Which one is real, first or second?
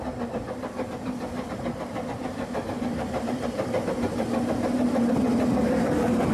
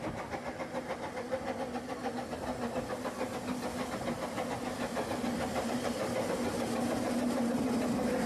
second